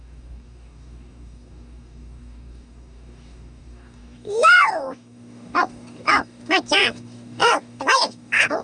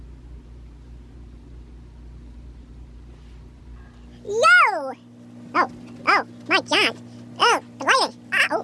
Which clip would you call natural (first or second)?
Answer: second